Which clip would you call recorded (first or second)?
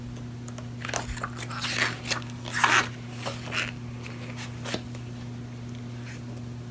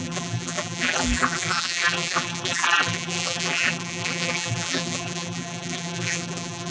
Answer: first